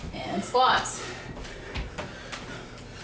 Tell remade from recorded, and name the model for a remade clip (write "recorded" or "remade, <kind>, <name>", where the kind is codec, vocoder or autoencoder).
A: recorded